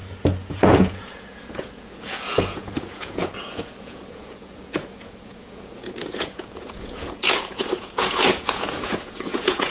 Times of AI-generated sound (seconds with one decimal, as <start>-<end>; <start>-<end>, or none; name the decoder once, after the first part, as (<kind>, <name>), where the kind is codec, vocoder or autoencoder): 0.5-9.7 (vocoder, Vocos)